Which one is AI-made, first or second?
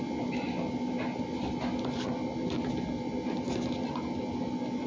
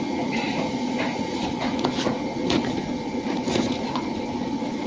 second